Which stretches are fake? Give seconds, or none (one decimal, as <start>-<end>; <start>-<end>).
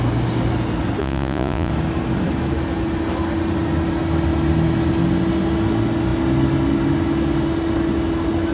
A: 1.0-1.7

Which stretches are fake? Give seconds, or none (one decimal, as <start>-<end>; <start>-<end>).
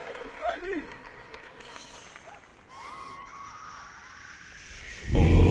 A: 0.0-2.0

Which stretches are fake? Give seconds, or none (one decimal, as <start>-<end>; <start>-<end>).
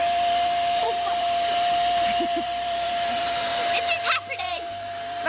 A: 0.0-3.5; 4.4-5.3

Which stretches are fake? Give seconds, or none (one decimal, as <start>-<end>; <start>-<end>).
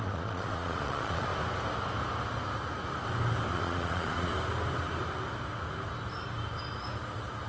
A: 0.0-1.3; 3.5-4.3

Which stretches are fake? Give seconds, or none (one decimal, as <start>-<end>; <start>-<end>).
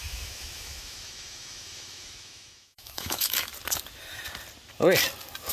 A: 0.0-3.5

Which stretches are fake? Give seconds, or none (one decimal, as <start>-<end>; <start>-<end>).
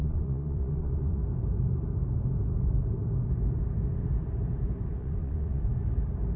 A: 0.0-1.2; 5.0-5.7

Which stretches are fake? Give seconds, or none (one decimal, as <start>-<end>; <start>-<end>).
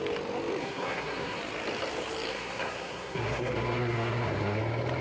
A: 0.6-1.4; 2.3-4.6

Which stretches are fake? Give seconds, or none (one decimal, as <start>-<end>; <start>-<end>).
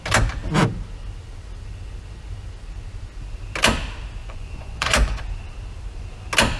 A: 4.2-5.2